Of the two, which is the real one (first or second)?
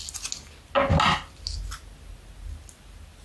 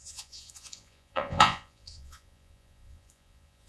first